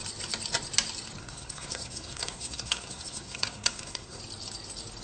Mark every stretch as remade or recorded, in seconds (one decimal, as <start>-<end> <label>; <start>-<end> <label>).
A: 0.0-1.2 recorded; 1.2-4.2 remade; 4.2-5.0 recorded